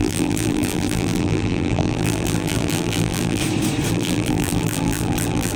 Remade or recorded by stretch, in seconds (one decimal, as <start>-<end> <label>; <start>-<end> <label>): 0.0-3.4 remade; 3.4-3.9 recorded; 3.9-5.6 remade

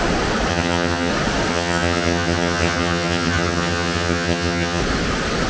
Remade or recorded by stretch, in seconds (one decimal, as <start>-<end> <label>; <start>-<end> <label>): 0.0-0.5 recorded; 0.5-1.1 remade; 1.1-1.5 recorded; 1.5-4.8 remade; 4.8-5.5 recorded